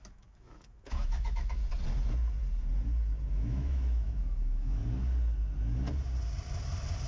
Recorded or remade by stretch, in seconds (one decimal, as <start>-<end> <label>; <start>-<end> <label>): 0.0-1.6 remade; 1.6-3.3 recorded; 3.3-4.8 remade; 4.8-7.1 recorded